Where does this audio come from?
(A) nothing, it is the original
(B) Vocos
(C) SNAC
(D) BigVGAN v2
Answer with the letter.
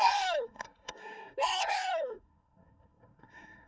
C